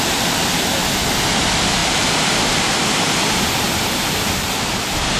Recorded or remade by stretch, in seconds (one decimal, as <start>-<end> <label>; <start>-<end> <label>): 0.0-1.8 recorded; 1.8-5.2 remade